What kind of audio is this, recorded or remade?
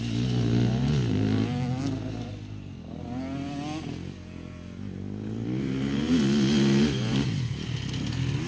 recorded